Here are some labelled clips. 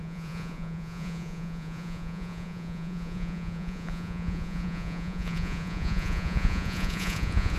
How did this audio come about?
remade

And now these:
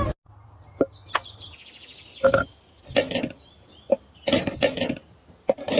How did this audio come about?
recorded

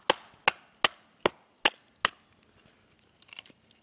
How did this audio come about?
recorded